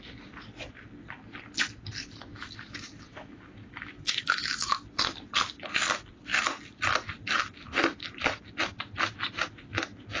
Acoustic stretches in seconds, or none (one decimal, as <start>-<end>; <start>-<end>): 0.0-2.0; 4.7-10.2